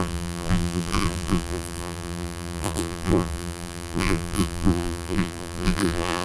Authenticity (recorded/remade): remade